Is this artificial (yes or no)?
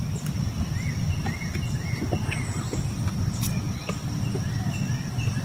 no